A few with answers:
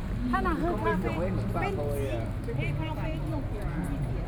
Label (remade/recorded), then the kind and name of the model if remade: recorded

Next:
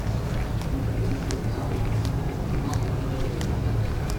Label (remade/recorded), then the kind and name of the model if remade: recorded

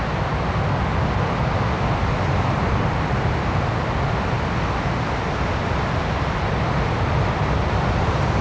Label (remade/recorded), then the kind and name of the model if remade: recorded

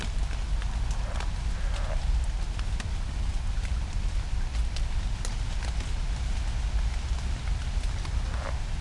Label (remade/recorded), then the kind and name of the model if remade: recorded